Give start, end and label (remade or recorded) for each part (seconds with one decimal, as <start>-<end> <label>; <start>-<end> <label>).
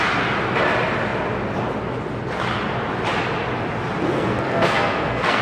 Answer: 0.0-4.1 recorded; 4.1-5.4 remade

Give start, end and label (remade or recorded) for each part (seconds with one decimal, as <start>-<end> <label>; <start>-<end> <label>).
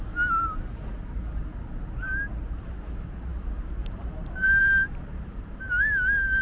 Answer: 0.0-1.2 remade; 1.2-2.4 recorded; 2.4-6.4 remade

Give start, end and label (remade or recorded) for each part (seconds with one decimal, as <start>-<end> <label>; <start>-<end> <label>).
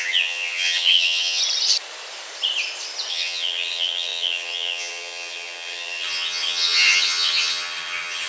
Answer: 0.0-1.4 remade; 1.4-3.1 recorded; 3.1-8.3 remade